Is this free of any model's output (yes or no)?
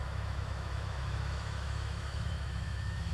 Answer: no